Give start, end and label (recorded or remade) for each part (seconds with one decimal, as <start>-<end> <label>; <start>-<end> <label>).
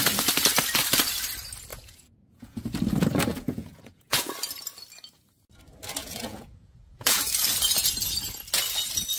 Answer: 0.0-1.7 recorded; 1.7-2.6 remade; 2.6-3.3 recorded; 3.3-4.3 remade; 4.3-6.0 recorded; 6.0-7.2 remade; 7.2-9.2 recorded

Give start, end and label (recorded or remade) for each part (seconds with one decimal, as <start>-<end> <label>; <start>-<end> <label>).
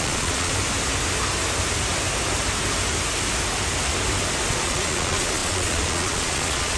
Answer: 0.0-0.5 remade; 0.5-4.5 recorded; 4.5-6.8 remade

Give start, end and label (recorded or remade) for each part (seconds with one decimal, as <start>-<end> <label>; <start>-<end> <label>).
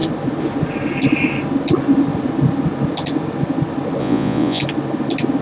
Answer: 0.0-4.0 recorded; 4.0-4.6 remade; 4.6-5.4 recorded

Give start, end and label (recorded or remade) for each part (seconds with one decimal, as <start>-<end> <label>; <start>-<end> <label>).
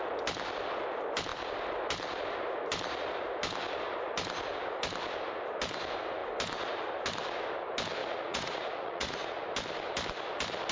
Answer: 0.0-8.0 recorded; 8.0-9.3 remade; 9.3-10.7 recorded